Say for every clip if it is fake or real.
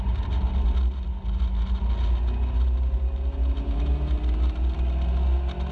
real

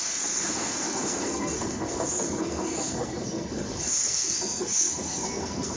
fake